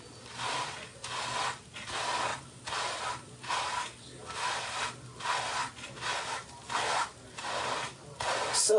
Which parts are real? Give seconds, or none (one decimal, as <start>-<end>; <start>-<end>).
0.0-8.8